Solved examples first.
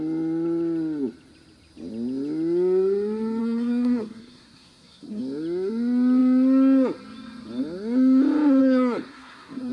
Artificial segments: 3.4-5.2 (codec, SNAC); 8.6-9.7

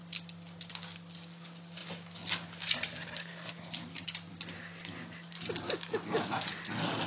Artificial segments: none

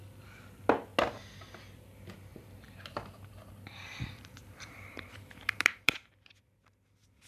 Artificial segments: 2.3-6.3 (vocoder, BigVGAN v2)